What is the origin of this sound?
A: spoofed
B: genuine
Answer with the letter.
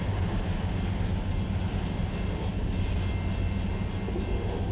B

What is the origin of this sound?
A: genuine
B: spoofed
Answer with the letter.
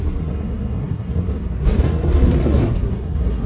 B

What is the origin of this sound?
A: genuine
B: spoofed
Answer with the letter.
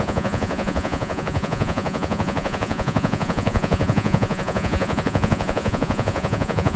B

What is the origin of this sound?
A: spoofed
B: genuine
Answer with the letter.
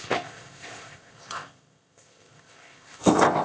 A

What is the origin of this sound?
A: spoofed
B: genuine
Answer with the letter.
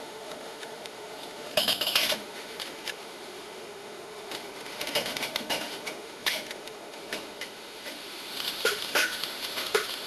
A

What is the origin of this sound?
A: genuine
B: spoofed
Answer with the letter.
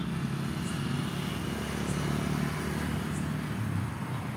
A